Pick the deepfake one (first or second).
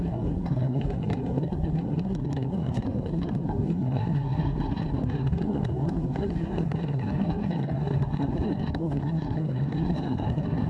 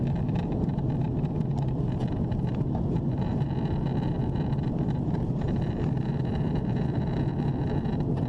first